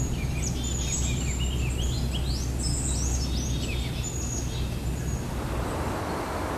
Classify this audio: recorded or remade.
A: recorded